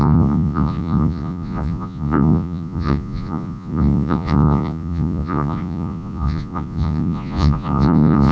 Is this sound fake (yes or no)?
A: yes